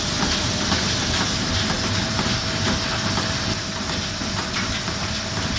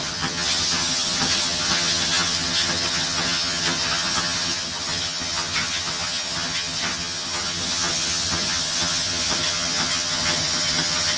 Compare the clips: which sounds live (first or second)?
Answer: first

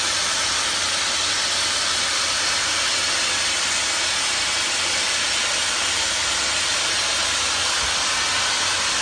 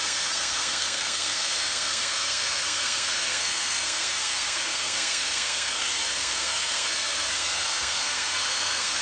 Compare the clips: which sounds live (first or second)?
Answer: first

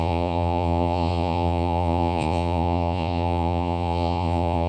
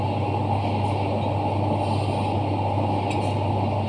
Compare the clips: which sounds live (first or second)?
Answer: second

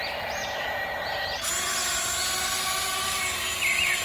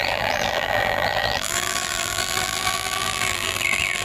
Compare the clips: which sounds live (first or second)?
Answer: first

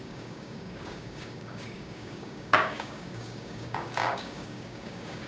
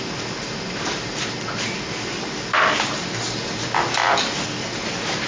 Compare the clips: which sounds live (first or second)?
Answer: second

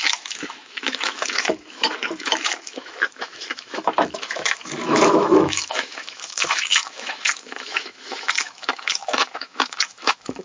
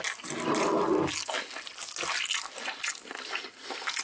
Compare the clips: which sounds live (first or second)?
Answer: second